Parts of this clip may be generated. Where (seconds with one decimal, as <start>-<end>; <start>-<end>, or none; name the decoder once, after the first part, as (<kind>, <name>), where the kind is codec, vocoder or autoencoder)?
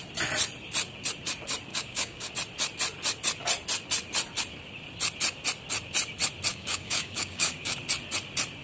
1.7-2.3 (codec, DAC); 6.5-7.8